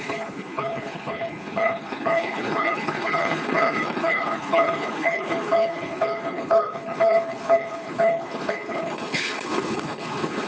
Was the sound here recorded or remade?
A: remade